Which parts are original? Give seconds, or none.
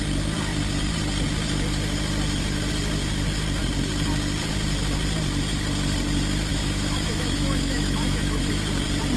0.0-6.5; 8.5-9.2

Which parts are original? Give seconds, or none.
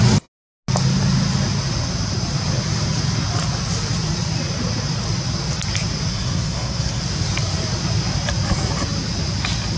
0.0-6.1; 7.0-9.8